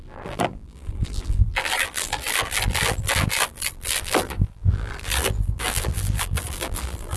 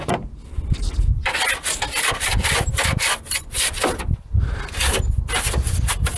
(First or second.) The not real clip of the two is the first